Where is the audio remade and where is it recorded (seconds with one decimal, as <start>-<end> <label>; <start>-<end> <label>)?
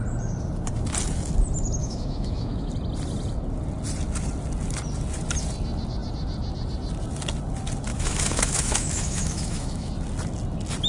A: 0.0-1.8 recorded; 1.8-2.7 remade; 2.7-7.9 recorded; 7.9-9.9 remade; 9.9-10.9 recorded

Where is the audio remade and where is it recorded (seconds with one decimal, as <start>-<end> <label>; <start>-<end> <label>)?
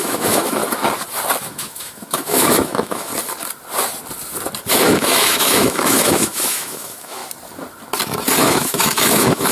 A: 0.0-0.6 remade; 0.6-1.4 recorded; 1.4-3.1 remade; 3.1-4.7 recorded; 4.7-7.2 remade; 7.2-8.4 recorded; 8.4-9.5 remade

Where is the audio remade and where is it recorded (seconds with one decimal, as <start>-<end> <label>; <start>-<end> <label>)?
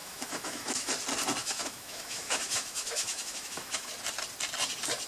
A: 0.0-0.9 remade; 0.9-1.4 recorded; 1.4-3.9 remade; 3.9-5.1 recorded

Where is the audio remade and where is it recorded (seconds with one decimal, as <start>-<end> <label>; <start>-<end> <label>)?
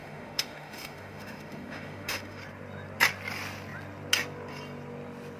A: 0.0-2.4 remade; 2.4-5.4 recorded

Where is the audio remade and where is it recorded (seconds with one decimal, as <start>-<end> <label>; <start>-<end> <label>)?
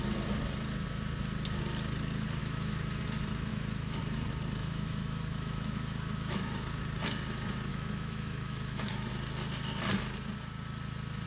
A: 0.0-2.4 recorded; 2.4-3.0 remade; 3.0-3.5 recorded; 3.5-4.0 remade; 4.0-4.6 recorded; 4.6-6.7 remade; 6.7-7.7 recorded; 7.7-9.1 remade; 9.1-11.3 recorded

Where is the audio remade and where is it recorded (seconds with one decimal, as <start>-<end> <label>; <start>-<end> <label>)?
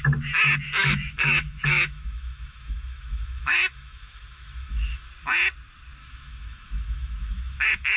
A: 0.0-0.8 recorded; 0.8-5.1 remade; 5.1-6.0 recorded; 6.0-8.0 remade